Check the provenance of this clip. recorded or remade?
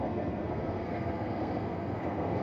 remade